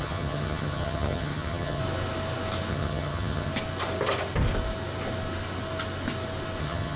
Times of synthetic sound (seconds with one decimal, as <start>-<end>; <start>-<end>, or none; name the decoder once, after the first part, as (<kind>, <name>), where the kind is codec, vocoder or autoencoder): 0.0-1.8 (vocoder, HiFi-GAN); 2.7-3.5; 6.6-7.0